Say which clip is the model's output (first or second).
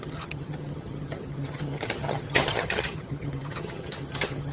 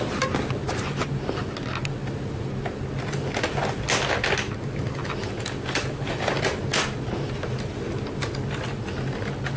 first